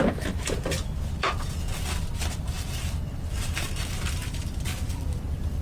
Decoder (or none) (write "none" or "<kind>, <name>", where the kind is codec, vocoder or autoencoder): vocoder, BigVGAN v2